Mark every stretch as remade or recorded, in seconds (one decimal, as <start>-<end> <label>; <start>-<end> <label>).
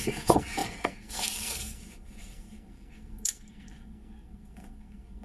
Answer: 0.0-5.2 remade